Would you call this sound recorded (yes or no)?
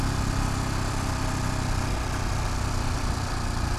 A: yes